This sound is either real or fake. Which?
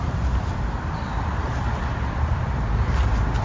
real